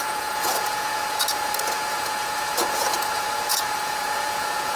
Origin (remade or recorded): remade